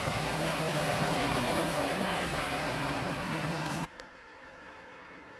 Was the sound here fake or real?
fake